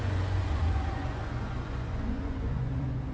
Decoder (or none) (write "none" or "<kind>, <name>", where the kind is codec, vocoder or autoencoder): vocoder, Vocos